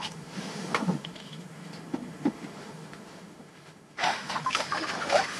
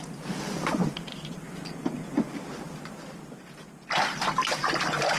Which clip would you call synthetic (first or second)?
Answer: first